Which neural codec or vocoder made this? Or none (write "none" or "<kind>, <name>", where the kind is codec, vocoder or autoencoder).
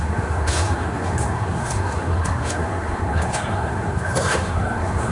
codec, SNAC